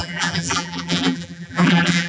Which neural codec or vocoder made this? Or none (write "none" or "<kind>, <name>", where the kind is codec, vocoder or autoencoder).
vocoder, BigVGAN v2